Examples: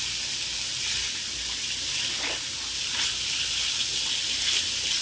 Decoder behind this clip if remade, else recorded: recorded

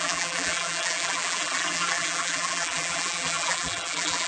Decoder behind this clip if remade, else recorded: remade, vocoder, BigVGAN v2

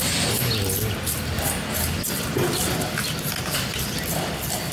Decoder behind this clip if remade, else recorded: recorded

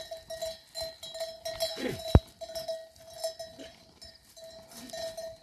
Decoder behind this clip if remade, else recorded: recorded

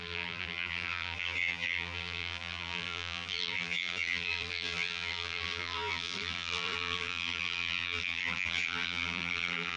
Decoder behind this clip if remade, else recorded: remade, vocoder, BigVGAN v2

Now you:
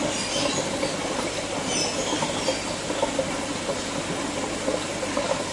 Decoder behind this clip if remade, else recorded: recorded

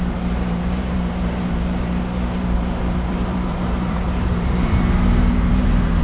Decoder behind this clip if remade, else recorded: remade, vocoder, BigVGAN v2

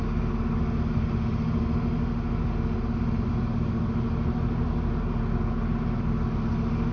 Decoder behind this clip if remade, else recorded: recorded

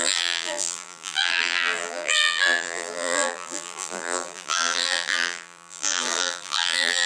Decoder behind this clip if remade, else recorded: remade, vocoder, BigVGAN v2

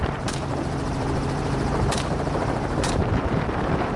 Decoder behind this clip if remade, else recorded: remade, vocoder, BigVGAN v2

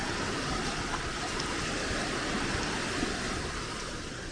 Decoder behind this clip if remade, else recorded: remade, vocoder, BigVGAN v2